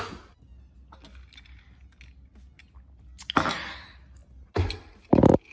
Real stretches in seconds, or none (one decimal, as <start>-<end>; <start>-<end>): 0.0-5.5